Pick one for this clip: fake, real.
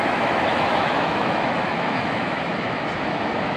fake